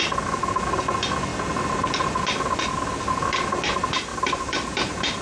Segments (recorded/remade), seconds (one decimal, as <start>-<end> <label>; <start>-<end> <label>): 0.0-4.1 recorded; 4.1-5.2 remade

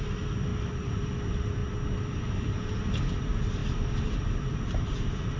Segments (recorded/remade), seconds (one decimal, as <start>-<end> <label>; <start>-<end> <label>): 0.0-1.6 remade; 1.6-2.1 recorded; 2.1-5.4 remade

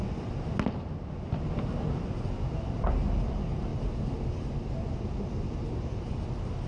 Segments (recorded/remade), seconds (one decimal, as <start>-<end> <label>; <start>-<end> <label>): 0.0-3.7 recorded; 3.7-4.5 remade; 4.5-6.7 recorded

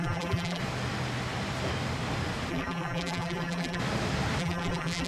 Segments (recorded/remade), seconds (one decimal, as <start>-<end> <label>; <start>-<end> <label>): 0.0-0.6 remade; 0.6-2.5 recorded; 2.5-3.8 remade; 3.8-4.4 recorded; 4.4-5.1 remade